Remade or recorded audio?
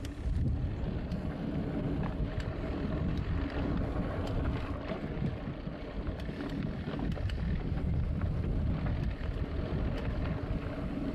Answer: recorded